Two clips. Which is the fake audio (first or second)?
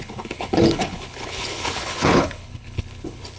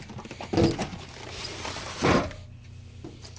first